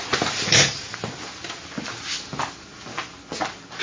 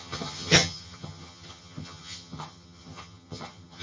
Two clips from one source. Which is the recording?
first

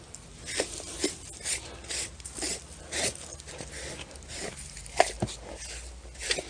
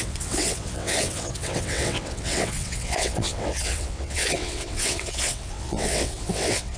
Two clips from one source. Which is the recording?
first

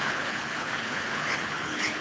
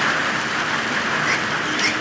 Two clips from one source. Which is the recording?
second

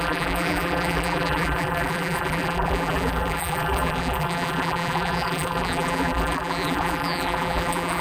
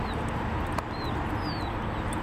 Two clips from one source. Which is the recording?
second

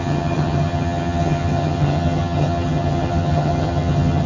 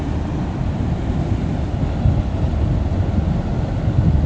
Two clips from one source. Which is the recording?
second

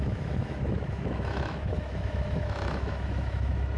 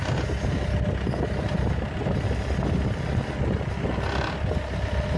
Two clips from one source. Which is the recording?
second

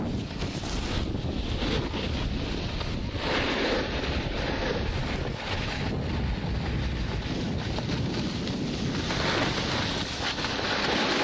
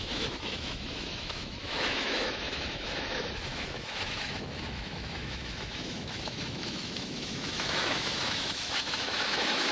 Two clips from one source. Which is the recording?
first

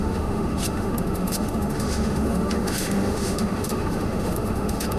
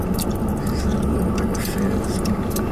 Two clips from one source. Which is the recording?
second